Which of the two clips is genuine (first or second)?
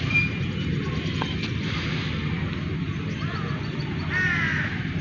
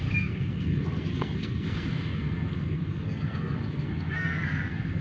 first